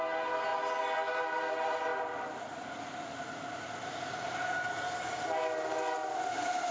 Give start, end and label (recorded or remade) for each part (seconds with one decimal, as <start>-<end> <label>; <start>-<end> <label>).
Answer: 0.0-6.7 recorded